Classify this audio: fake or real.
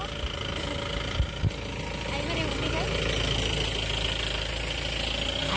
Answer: real